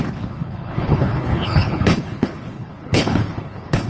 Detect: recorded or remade remade